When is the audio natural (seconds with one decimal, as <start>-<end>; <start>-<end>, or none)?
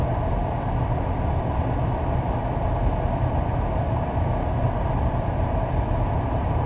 0.0-6.7